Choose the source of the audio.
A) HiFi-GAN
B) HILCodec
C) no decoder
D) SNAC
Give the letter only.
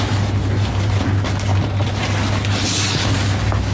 C